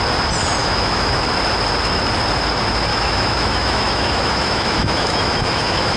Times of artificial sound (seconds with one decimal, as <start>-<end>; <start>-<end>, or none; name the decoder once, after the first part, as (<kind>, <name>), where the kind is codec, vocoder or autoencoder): 0.6-1.2 (autoencoder, DAC-VAE); 2.9-6.0